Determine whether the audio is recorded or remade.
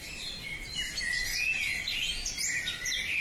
recorded